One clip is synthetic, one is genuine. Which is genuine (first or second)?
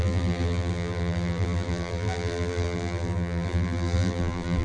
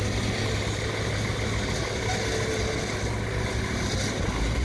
second